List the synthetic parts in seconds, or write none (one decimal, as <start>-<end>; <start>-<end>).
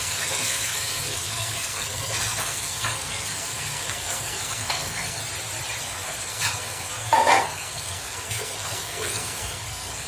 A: 0.0-5.2; 5.8-10.1